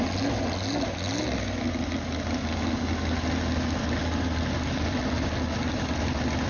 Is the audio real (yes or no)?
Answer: yes